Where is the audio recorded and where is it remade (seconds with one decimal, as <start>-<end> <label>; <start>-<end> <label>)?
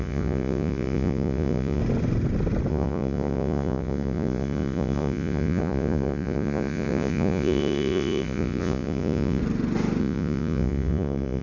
0.0-1.8 remade; 1.8-2.7 recorded; 2.7-9.4 remade; 9.4-10.0 recorded; 10.0-11.4 remade